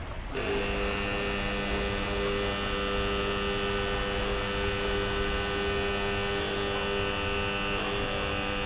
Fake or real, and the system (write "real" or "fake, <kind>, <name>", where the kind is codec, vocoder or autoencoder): real